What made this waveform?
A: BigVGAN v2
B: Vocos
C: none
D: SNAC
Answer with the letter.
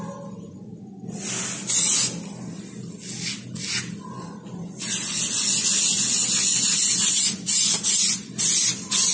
C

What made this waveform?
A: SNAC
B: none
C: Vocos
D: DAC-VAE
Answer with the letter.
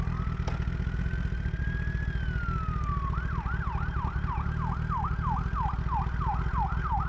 B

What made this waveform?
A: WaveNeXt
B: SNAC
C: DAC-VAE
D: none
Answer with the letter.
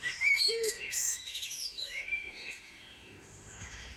C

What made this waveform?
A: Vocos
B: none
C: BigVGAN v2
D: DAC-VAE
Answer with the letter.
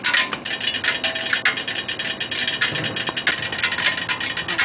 B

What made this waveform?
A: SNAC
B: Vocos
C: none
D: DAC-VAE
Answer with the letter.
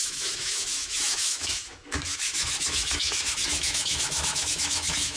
D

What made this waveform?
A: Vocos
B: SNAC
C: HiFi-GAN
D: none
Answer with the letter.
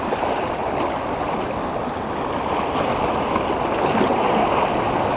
D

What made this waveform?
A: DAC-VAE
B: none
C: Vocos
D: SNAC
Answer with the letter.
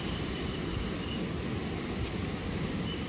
B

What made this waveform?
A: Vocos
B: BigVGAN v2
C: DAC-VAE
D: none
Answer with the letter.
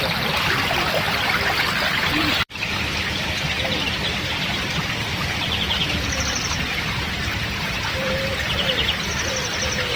B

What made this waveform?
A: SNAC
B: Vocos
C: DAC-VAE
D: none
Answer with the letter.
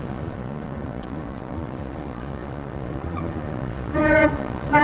B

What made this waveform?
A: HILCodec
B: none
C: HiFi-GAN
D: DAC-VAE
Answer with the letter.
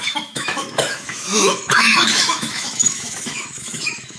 D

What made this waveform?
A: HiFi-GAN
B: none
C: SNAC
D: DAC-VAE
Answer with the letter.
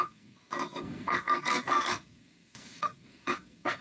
C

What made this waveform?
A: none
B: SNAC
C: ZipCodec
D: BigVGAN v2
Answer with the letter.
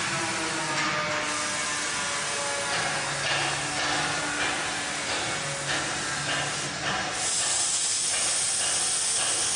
A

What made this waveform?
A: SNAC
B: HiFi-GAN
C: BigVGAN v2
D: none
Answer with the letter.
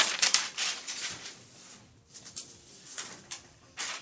C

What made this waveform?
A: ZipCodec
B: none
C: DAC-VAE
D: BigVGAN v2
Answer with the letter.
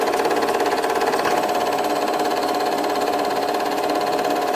B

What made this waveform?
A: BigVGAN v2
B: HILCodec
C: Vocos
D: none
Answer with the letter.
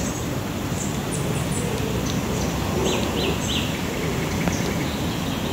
D